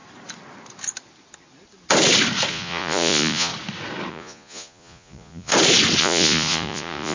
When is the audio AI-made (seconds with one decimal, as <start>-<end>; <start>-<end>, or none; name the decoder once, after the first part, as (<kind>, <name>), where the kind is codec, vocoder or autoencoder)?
2.5-3.5 (vocoder, Vocos); 4.1-5.5; 6.0-7.1